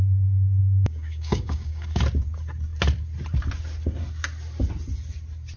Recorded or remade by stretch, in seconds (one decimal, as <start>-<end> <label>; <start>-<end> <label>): 0.0-0.6 recorded; 0.6-2.0 remade; 2.0-5.6 recorded